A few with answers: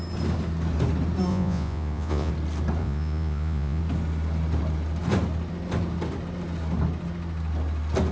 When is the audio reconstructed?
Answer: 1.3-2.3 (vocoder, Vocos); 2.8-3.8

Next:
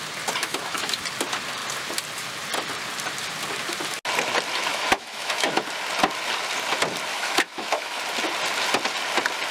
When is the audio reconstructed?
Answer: 0.4-1.0 (autoencoder, DAC-VAE); 4.7-5.6; 7.1-8.0

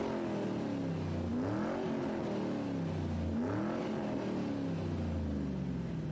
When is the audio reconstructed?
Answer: none

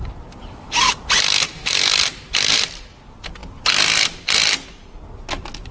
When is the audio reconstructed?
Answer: 0.4-2.0 (vocoder, BigVGAN v2)

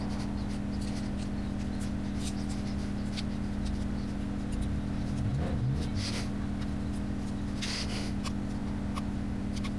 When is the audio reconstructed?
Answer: none

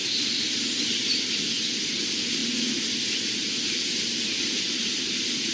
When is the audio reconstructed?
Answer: 0.0-2.4 (vocoder, BigVGAN v2); 4.6-5.5

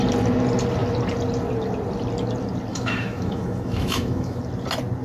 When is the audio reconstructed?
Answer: 2.7-4.4 (autoencoder, DAC-VAE)

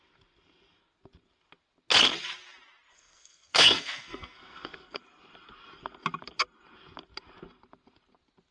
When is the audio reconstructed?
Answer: 2.9-5.0 (codec, SNAC)